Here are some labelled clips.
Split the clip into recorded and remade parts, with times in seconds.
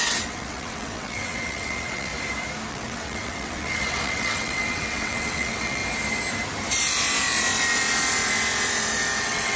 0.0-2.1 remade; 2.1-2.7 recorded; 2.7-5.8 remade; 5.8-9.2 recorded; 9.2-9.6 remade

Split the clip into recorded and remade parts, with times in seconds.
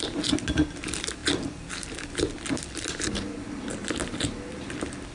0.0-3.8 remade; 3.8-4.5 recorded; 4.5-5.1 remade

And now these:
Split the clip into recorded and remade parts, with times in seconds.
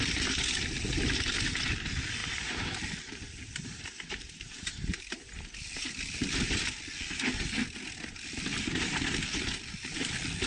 0.0-2.2 recorded; 2.2-5.0 remade; 5.0-10.5 recorded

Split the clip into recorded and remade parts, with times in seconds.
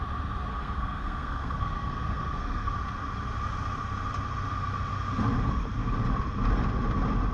0.0-0.5 recorded; 0.5-2.7 remade; 2.7-7.3 recorded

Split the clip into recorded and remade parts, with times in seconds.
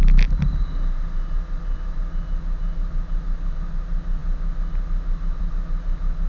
0.0-6.3 recorded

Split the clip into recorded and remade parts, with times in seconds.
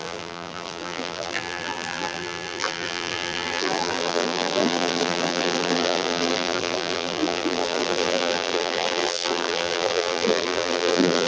0.0-11.3 remade